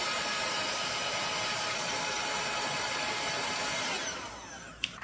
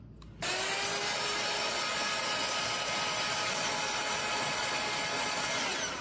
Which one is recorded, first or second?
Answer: second